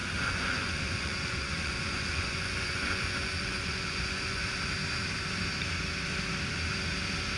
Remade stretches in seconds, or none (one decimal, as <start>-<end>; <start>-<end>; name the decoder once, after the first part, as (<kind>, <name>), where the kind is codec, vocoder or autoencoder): 0.0-4.4 (vocoder, Vocos)